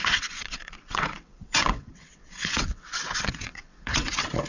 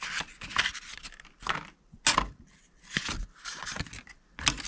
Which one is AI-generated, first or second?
first